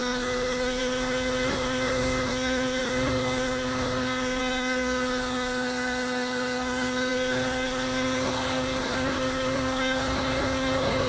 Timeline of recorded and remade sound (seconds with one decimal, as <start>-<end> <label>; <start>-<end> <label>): 0.0-11.1 remade